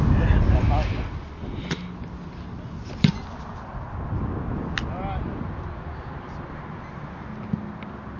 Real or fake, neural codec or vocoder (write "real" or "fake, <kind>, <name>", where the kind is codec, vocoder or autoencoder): real